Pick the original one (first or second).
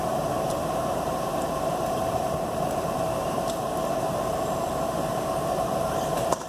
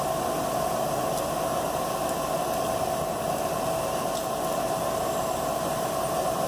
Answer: second